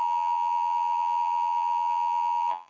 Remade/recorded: remade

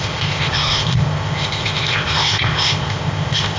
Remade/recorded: remade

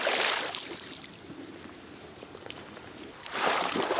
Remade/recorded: remade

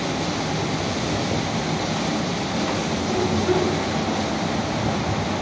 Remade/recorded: recorded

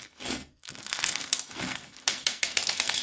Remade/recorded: remade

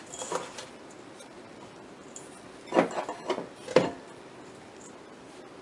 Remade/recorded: recorded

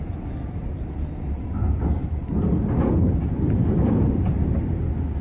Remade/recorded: recorded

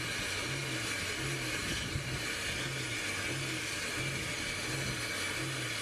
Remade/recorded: recorded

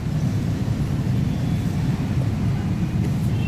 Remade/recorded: recorded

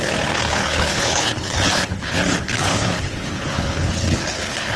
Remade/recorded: remade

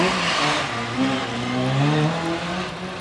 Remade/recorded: recorded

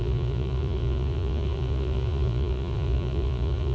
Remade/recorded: remade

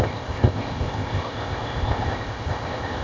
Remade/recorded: remade